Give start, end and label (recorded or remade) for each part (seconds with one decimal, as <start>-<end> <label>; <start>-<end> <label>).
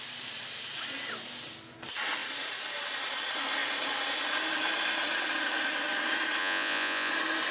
0.0-6.4 recorded; 6.4-7.1 remade; 7.1-7.5 recorded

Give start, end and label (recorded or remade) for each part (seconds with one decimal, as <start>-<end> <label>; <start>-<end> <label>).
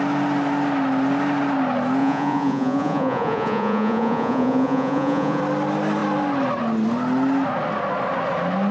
0.0-2.0 recorded; 2.0-5.4 remade; 5.4-8.7 recorded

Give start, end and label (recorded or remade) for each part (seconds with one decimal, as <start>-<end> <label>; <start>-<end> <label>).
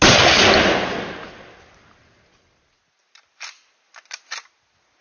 0.0-5.0 recorded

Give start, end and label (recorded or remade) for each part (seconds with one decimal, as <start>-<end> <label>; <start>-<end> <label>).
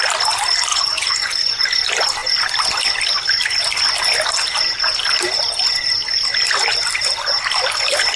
0.0-0.7 recorded; 0.7-1.6 remade; 1.6-8.2 recorded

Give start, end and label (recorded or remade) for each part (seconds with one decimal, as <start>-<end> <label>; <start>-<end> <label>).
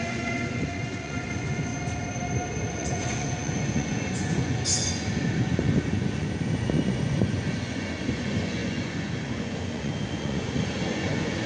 0.0-1.7 remade; 1.7-2.7 recorded; 2.7-11.5 remade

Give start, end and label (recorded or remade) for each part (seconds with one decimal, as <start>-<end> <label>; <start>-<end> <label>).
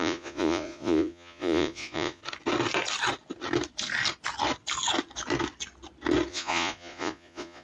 0.0-2.2 remade; 2.2-6.3 recorded; 6.3-7.6 remade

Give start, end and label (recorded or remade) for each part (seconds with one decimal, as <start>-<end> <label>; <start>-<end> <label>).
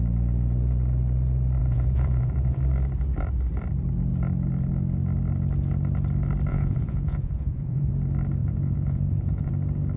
0.0-1.6 recorded; 1.6-2.6 remade; 2.6-6.5 recorded; 6.5-7.9 remade; 7.9-8.4 recorded; 8.4-9.5 remade; 9.5-10.0 recorded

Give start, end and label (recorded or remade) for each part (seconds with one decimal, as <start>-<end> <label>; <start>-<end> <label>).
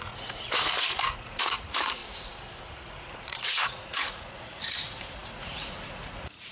0.0-2.0 remade; 2.0-2.7 recorded; 2.7-6.5 remade